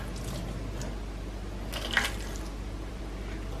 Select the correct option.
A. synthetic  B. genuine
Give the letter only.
A